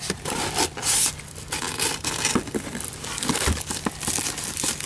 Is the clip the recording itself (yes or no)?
yes